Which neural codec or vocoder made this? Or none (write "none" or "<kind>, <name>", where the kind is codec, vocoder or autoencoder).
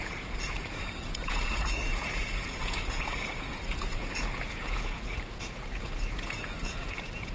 vocoder, Vocos